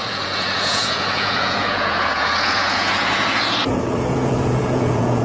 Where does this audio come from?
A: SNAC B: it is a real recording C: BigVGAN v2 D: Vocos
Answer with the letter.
D